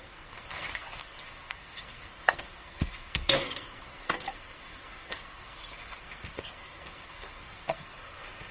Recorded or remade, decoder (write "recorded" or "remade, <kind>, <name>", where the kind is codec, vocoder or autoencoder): remade, codec, SNAC